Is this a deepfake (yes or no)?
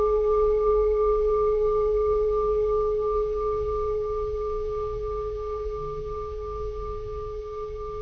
yes